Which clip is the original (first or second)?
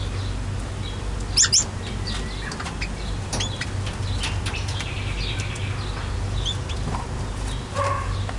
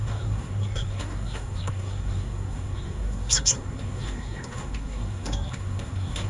first